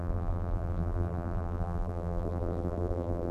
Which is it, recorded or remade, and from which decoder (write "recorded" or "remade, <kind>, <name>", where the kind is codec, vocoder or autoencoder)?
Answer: remade, vocoder, BigVGAN v2